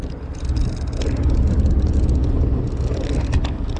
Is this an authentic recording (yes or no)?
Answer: yes